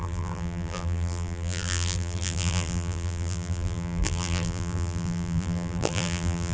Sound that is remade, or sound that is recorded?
remade